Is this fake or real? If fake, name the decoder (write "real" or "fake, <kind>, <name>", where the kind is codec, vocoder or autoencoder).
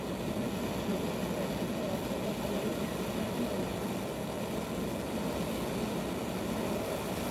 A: real